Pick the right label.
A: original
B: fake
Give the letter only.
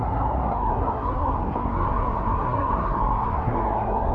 B